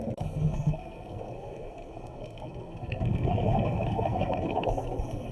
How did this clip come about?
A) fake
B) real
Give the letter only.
A